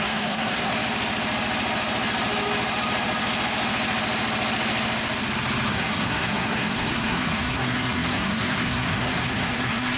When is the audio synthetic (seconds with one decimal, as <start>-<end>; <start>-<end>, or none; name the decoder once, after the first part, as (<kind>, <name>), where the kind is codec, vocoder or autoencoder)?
0.0-0.7 (codec, SNAC); 5.7-10.0